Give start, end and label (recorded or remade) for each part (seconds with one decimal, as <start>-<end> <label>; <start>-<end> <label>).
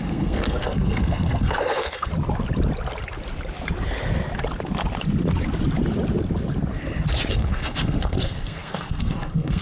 0.0-2.1 remade; 2.1-7.3 recorded; 7.3-9.6 remade